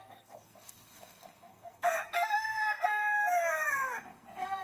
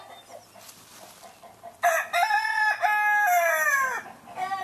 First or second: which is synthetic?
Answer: first